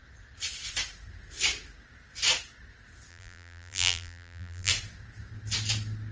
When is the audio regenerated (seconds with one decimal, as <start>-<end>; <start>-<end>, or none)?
3.1-4.7